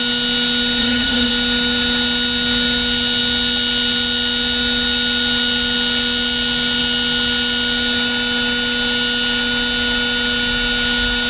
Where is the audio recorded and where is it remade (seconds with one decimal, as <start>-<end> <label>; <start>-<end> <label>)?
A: 0.0-0.8 recorded; 0.8-1.3 remade; 1.3-11.3 recorded